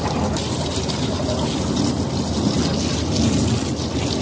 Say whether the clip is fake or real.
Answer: real